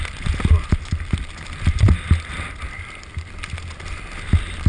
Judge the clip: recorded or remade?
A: recorded